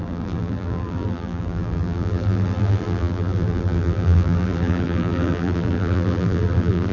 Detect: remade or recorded remade